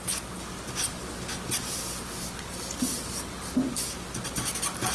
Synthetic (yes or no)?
no